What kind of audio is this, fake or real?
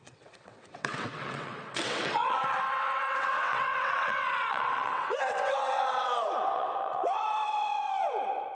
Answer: fake